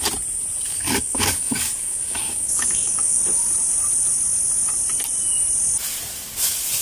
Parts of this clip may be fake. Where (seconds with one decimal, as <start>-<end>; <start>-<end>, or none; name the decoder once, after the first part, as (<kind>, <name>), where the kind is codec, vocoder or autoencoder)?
0.7-3.2 (codec, DAC)